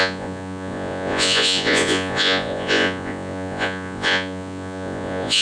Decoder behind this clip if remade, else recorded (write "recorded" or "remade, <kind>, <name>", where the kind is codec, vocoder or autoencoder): remade, vocoder, Vocos